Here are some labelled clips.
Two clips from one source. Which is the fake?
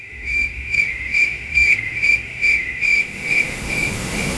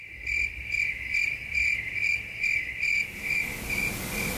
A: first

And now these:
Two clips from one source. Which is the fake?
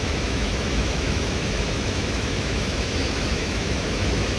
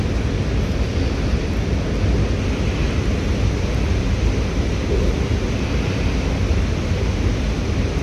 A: first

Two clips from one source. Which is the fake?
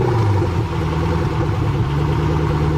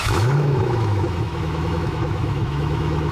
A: second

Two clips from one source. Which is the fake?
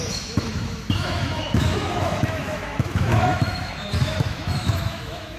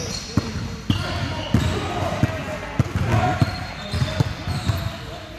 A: first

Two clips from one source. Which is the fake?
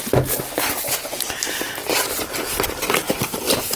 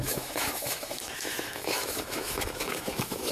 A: second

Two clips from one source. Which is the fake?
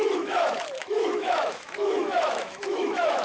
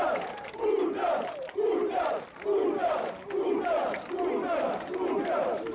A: first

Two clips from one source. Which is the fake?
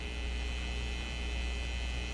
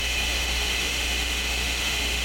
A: second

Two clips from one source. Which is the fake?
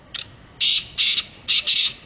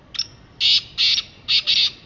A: first